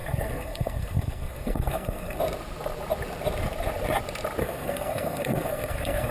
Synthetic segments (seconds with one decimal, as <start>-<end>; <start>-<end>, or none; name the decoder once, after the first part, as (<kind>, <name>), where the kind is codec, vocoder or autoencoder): 0.0-2.2 (codec, SNAC); 4.4-6.1